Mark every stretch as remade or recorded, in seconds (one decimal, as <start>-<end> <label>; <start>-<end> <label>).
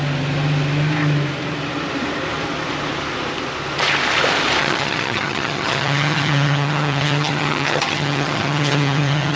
0.0-4.6 recorded; 4.6-9.4 remade